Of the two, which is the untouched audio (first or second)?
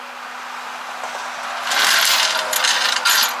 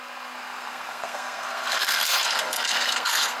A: first